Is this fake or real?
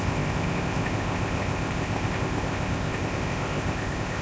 fake